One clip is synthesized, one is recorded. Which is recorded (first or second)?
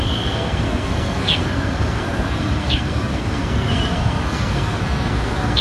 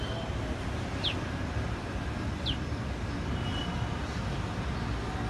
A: second